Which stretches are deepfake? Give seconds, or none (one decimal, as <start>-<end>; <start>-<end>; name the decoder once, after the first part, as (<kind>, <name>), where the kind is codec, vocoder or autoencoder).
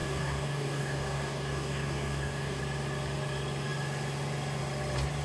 0.0-2.6 (codec, DAC)